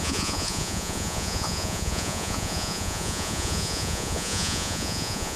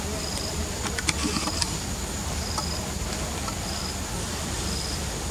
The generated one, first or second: first